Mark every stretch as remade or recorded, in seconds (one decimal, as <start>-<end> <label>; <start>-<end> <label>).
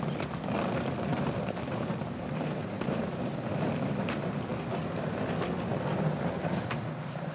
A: 0.0-1.1 recorded; 1.1-3.7 remade; 3.7-7.3 recorded